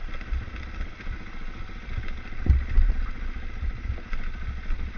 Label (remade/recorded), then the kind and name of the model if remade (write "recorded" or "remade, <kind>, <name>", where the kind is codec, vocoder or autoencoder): recorded